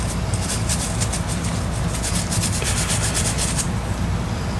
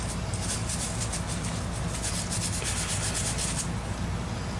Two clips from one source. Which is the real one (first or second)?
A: second